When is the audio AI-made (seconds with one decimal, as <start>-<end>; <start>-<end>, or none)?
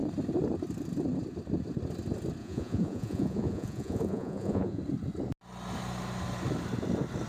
2.4-4.8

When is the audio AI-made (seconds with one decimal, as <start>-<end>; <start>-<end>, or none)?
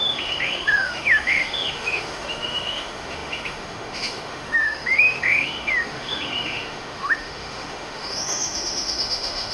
0.0-9.5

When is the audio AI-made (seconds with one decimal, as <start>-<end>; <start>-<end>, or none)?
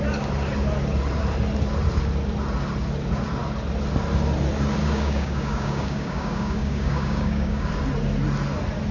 4.8-7.7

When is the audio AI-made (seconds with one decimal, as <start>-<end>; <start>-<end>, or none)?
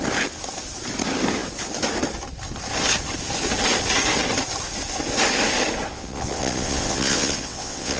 5.9-8.0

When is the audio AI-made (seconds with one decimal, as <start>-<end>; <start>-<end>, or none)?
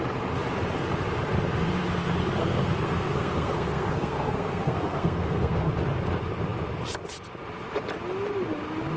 2.4-5.7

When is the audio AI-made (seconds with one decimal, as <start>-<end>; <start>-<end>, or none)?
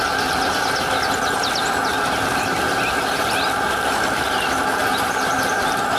none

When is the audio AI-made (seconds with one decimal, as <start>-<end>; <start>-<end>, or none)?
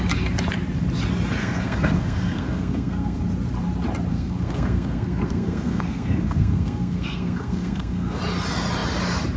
1.4-3.2; 4.1-8.2